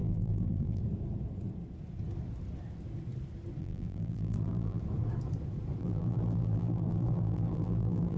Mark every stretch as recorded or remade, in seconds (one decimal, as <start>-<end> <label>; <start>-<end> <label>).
0.0-0.8 remade; 0.8-3.6 recorded; 3.6-4.8 remade; 4.8-5.8 recorded; 5.8-8.2 remade